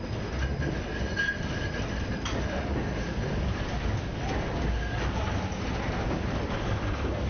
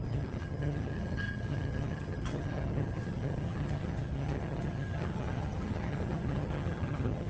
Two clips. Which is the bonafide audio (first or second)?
first